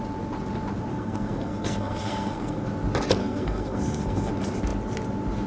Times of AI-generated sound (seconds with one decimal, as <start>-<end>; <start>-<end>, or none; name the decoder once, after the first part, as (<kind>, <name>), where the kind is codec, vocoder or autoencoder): 0.9-2.7 (codec, SNAC); 3.2-4.3